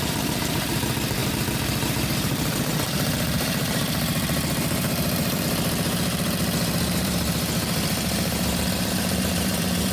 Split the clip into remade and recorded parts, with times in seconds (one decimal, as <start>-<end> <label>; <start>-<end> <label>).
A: 0.0-9.9 remade